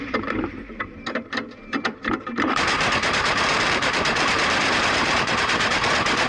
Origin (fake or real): fake